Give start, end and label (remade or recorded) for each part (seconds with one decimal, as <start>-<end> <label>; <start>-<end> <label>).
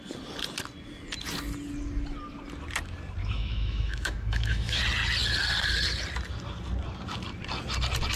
0.0-3.2 recorded; 3.2-4.8 remade; 4.8-8.2 recorded